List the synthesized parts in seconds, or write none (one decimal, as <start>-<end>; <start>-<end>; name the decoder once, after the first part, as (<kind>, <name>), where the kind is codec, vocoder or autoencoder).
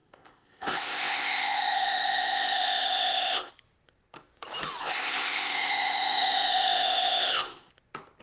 0.0-3.5 (codec, ZipCodec); 4.8-7.7